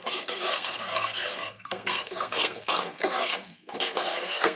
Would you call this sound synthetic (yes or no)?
yes